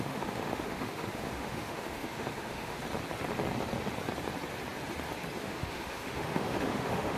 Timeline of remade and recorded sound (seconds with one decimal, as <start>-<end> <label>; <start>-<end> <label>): 0.0-2.8 remade; 2.8-5.4 recorded; 5.4-7.2 remade